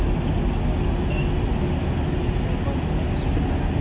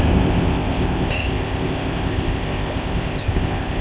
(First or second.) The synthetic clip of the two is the second